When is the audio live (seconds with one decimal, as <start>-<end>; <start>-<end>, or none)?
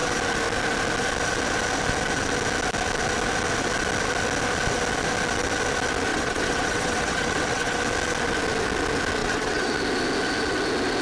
0.0-6.1; 7.8-9.2; 9.8-11.0